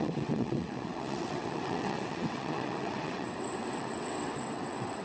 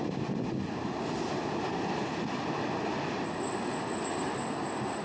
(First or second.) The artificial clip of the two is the first